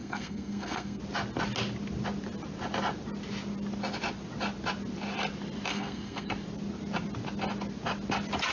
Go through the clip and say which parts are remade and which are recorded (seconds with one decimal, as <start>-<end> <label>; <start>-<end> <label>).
0.0-1.0 remade; 1.0-5.7 recorded; 5.7-6.3 remade; 6.3-8.5 recorded